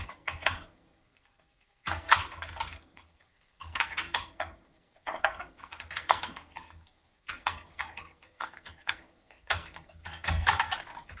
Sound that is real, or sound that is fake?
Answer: fake